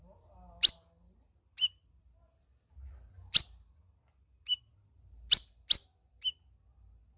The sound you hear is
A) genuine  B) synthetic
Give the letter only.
A